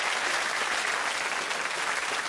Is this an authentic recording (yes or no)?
yes